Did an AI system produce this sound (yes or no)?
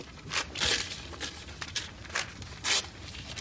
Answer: no